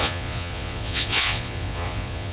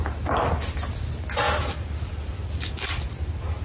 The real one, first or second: second